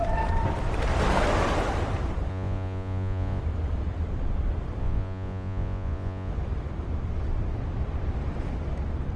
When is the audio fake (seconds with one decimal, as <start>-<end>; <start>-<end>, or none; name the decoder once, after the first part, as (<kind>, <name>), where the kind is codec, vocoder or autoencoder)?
2.3-3.4 (vocoder, Vocos); 4.8-6.3